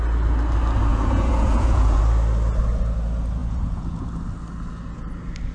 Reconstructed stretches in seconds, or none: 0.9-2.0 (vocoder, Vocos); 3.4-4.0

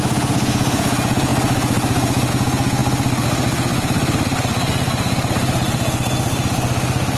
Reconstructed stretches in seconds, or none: 0.0-1.3 (vocoder, Vocos); 2.3-2.8